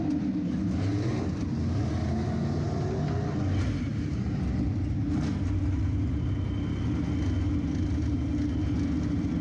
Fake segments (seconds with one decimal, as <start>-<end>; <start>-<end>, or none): none